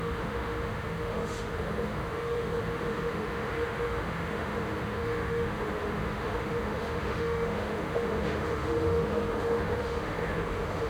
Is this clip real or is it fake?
fake